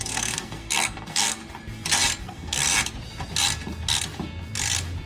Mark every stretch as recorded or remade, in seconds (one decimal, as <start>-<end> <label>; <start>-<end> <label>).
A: 0.0-1.4 remade; 1.4-2.2 recorded; 2.2-2.6 remade; 2.6-5.1 recorded